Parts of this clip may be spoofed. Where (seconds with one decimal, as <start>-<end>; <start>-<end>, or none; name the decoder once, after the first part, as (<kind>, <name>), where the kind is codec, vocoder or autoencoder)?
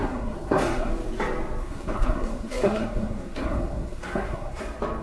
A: 0.0-0.9 (codec, SNAC); 1.6-4.6